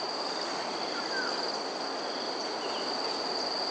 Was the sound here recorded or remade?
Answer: recorded